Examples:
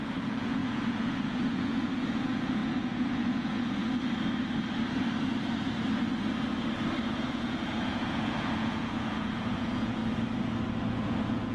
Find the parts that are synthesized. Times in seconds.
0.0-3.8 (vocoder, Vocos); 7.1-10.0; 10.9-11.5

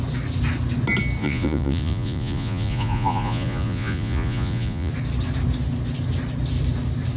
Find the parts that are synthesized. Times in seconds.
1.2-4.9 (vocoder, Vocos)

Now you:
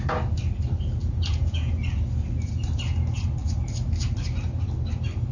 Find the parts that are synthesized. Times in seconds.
1.0-1.7 (vocoder, Vocos)

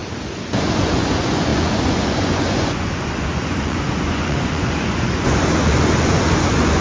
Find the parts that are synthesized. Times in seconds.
0.6-6.8 (vocoder, Vocos)

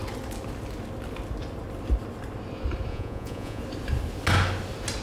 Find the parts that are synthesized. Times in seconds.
2.9-3.6 (vocoder, Vocos)

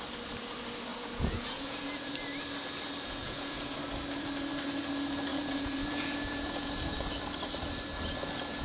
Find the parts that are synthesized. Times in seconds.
0.9-2.1 (vocoder, Vocos); 3.2-3.8; 5.3-7.1